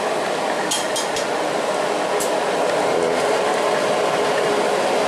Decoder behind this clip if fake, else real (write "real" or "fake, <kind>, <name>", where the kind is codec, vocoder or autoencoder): real